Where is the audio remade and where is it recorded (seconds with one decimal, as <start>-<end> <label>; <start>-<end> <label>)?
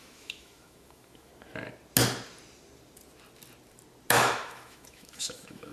0.0-1.3 remade; 1.3-4.1 recorded; 4.1-5.7 remade